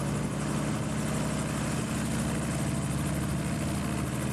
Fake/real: real